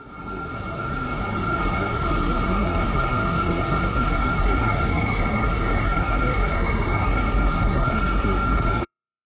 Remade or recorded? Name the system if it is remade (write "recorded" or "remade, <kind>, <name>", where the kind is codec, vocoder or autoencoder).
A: remade, codec, SNAC